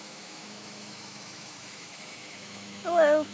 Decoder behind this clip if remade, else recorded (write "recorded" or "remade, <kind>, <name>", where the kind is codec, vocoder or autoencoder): remade, autoencoder, DAC-VAE